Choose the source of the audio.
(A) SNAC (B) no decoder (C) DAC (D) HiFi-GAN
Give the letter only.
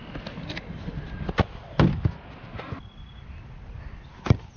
B